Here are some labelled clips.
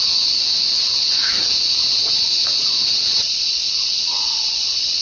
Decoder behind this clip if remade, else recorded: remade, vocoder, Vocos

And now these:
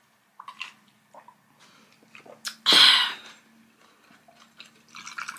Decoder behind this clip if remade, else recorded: recorded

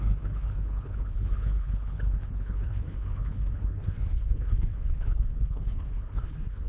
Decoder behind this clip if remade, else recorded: remade, codec, HILCodec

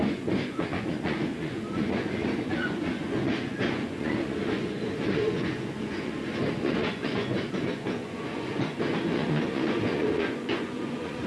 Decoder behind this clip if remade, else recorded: remade, vocoder, Vocos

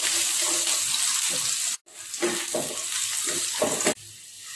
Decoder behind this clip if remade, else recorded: recorded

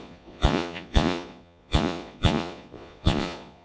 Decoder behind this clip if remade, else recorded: remade, vocoder, Vocos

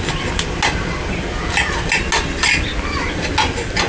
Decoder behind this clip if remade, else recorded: recorded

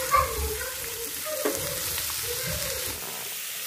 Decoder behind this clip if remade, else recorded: recorded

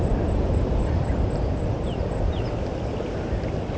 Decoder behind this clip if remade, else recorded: recorded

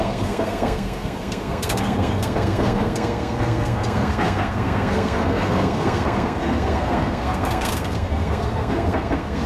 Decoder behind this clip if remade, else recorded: remade, codec, SNAC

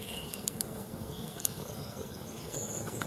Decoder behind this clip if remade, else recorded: remade, codec, SNAC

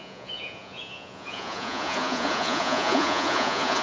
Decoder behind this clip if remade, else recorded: remade, vocoder, Vocos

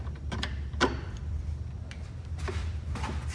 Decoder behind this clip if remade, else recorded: recorded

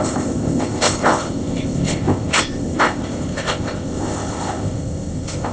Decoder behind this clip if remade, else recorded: remade, codec, ZipCodec